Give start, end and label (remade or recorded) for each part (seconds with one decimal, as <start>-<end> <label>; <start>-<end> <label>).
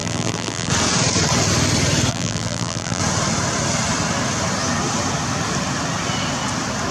0.0-0.7 remade; 0.7-2.1 recorded; 2.1-3.0 remade; 3.0-6.9 recorded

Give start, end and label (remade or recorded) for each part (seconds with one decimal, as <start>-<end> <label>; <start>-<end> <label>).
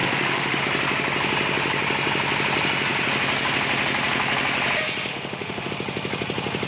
0.0-0.6 remade; 0.6-5.1 recorded; 5.1-5.7 remade; 5.7-6.7 recorded